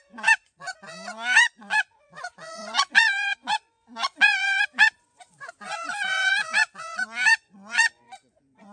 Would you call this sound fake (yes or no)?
yes